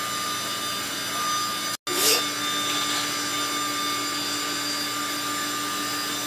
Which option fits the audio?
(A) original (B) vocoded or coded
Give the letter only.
A